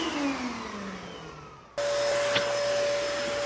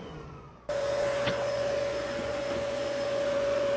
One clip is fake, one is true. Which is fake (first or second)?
second